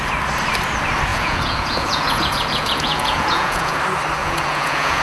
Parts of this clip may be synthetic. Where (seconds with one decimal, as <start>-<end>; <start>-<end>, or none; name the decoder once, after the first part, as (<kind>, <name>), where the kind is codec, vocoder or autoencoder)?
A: 1.1-3.8 (vocoder, Vocos); 4.2-5.0